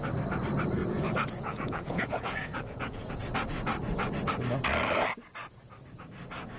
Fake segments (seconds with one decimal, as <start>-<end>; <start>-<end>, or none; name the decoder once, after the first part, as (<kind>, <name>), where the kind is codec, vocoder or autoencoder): 0.8-3.2 (vocoder, Vocos)